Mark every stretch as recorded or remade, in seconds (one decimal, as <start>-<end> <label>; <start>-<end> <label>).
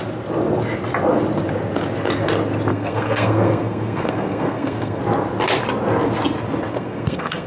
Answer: 0.0-2.7 recorded; 2.7-5.0 remade; 5.0-6.7 recorded; 6.7-7.5 remade